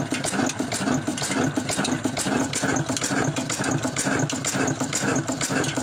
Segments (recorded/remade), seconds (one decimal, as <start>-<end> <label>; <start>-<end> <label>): 0.0-5.8 recorded